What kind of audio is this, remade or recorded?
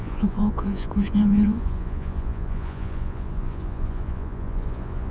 remade